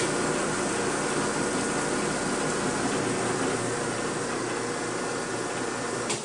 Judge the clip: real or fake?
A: real